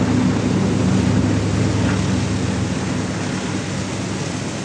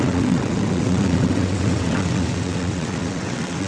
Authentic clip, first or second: first